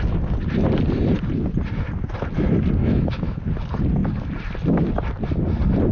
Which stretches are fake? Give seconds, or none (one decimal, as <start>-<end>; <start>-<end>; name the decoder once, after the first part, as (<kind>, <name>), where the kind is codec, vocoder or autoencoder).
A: 2.8-3.4 (autoencoder, DAC-VAE)